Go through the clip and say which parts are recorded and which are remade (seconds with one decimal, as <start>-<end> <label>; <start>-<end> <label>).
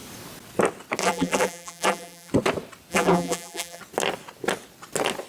0.0-1.0 recorded; 1.0-2.3 remade; 2.3-2.9 recorded; 2.9-3.8 remade; 3.8-5.3 recorded